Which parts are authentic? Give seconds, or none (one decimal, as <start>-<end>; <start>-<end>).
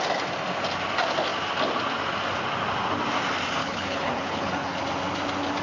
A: 0.0-3.6; 4.8-5.6